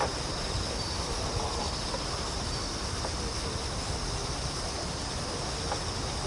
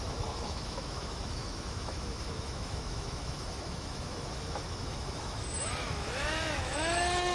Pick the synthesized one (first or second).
second